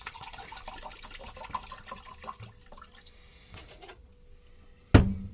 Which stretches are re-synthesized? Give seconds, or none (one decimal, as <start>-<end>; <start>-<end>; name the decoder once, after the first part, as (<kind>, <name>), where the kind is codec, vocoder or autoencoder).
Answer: 0.0-0.5 (vocoder, Vocos); 3.3-4.1